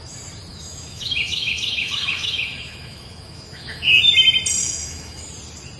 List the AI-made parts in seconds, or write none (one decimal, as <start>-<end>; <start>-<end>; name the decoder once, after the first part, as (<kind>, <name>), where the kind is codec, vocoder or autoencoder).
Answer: 0.5-4.0 (autoencoder, DAC-VAE); 4.6-5.3